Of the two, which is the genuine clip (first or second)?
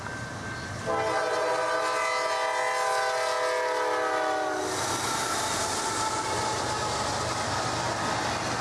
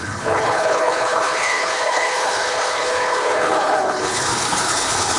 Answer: first